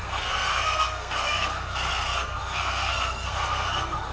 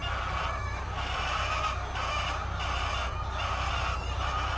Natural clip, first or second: second